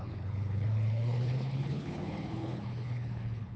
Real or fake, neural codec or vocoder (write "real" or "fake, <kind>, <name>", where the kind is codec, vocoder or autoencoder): fake, codec, HILCodec